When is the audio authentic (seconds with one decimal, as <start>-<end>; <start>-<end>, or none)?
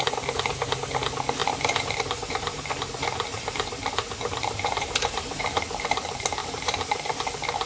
0.0-1.4; 2.6-3.3; 5.4-6.4; 7.1-7.7